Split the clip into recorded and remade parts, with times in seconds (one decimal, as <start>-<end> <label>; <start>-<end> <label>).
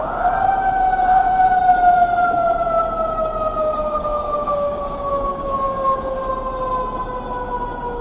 0.0-3.6 recorded; 3.6-6.3 remade; 6.3-8.0 recorded